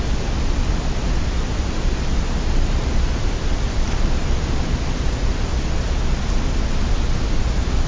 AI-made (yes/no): no